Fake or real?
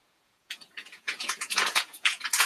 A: fake